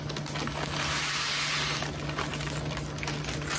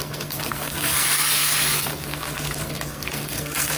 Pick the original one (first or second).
first